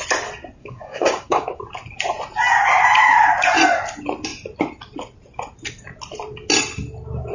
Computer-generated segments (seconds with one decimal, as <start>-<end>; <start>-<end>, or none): 0.6-1.6